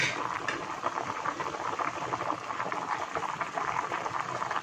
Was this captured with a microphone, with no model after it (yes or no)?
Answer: yes